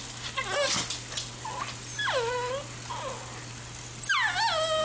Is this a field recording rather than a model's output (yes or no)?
yes